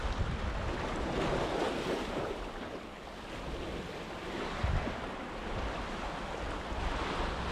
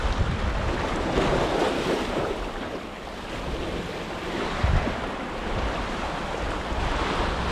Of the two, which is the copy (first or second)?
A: second